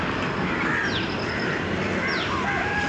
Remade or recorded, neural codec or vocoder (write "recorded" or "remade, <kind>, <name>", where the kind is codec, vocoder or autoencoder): recorded